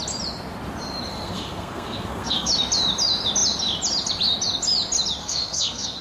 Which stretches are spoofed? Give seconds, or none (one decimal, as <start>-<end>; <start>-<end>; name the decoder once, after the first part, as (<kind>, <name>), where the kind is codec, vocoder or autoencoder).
1.1-2.5 (codec, SNAC); 5.2-6.0